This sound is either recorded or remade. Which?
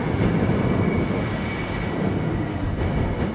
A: recorded